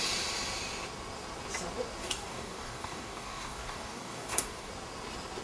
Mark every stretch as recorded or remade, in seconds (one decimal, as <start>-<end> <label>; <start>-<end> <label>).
0.0-2.0 recorded; 2.0-4.7 remade; 4.7-5.4 recorded